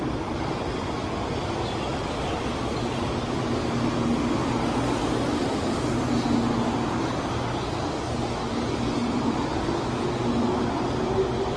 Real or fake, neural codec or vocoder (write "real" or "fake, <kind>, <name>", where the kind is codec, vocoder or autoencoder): real